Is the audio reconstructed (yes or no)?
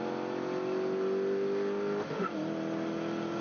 no